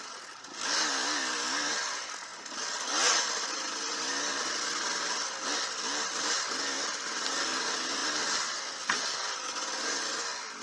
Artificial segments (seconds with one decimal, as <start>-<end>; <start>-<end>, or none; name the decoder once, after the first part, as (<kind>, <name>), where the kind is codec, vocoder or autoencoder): 8.0-8.6 (vocoder, BigVGAN v2)